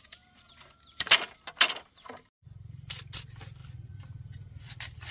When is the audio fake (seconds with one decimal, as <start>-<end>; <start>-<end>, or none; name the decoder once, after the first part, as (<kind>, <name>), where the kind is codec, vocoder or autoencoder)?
none

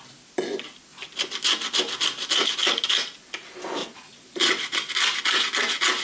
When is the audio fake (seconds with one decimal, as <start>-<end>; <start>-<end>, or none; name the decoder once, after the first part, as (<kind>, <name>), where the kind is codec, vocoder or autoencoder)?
3.8-4.9 (vocoder, Vocos)

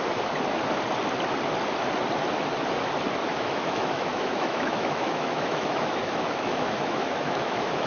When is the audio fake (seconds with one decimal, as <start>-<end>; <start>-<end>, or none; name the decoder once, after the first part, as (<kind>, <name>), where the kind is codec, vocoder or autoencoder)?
3.2-7.9 (autoencoder, DAC-VAE)

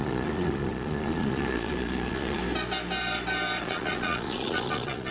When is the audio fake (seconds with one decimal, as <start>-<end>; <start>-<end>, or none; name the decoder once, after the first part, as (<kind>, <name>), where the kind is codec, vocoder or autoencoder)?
0.0-2.4 (vocoder, Vocos); 3.6-5.1